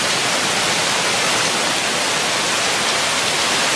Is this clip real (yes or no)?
yes